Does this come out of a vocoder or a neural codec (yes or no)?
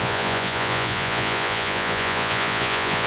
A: yes